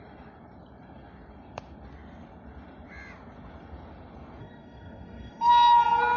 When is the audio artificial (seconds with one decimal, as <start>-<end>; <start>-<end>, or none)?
4.4-5.5